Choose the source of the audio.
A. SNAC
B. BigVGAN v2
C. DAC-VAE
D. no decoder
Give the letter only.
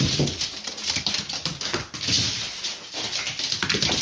D